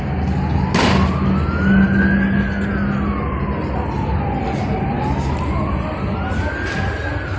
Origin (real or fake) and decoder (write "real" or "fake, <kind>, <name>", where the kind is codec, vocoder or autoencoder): real